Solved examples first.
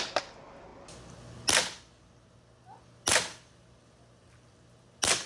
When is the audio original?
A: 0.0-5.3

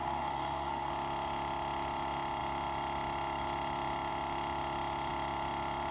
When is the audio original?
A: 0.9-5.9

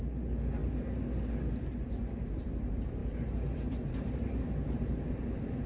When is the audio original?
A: 0.6-2.4

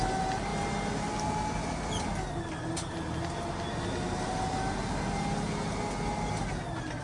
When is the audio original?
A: 0.0-7.0

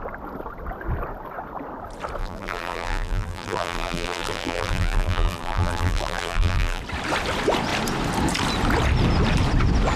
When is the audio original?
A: 0.0-2.2; 6.8-10.0